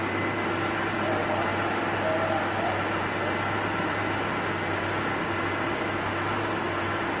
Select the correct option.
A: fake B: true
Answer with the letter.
B